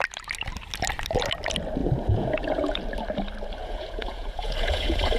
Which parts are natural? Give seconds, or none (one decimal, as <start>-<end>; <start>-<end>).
0.0-1.8; 2.8-3.6